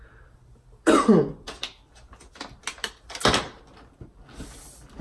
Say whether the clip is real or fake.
real